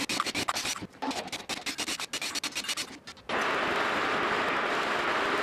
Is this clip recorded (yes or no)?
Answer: yes